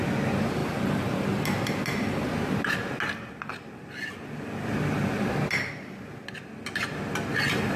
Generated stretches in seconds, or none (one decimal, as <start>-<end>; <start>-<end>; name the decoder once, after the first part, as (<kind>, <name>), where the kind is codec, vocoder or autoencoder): none